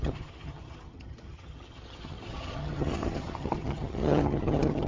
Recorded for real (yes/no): no